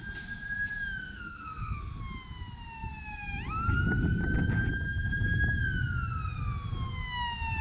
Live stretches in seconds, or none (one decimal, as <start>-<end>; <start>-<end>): 0.0-1.0; 2.0-7.6